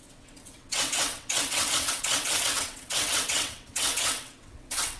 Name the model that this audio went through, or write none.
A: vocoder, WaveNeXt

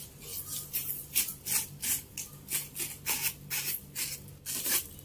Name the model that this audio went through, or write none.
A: none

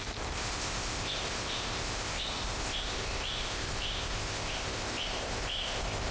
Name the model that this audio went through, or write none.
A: codec, ZipCodec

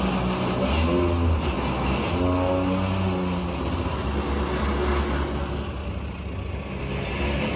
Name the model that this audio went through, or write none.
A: none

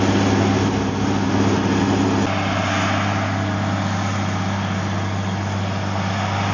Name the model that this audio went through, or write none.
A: none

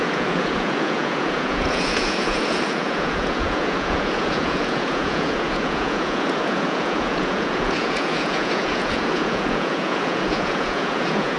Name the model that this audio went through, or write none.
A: vocoder, Vocos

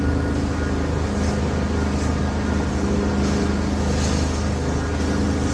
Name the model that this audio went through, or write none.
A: none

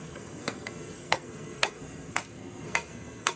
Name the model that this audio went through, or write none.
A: codec, SNAC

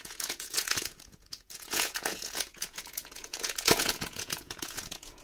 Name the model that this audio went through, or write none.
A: vocoder, Vocos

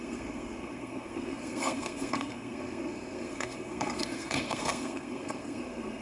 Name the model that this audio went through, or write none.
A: codec, SNAC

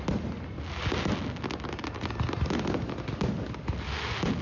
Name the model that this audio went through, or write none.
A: none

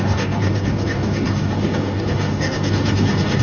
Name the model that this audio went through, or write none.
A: codec, DAC